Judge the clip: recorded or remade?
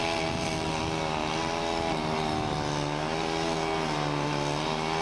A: recorded